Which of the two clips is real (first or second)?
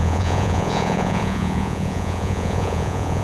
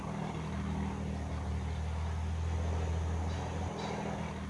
second